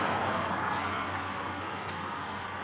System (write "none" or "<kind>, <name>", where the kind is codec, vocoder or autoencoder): codec, SNAC